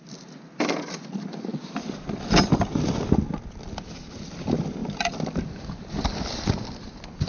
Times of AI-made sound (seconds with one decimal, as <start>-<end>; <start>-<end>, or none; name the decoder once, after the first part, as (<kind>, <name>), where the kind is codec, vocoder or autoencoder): none